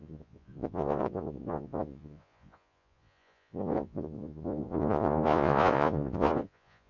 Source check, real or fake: fake